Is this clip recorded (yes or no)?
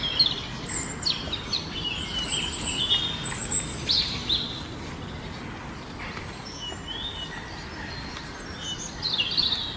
yes